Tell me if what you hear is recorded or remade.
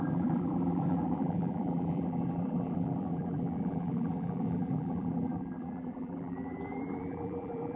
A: remade